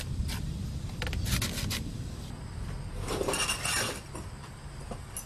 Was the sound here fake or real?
real